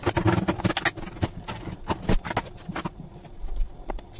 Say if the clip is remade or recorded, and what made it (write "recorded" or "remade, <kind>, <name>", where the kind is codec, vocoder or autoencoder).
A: recorded